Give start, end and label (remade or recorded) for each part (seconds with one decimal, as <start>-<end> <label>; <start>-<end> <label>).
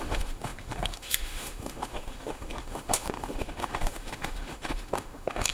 0.0-5.5 remade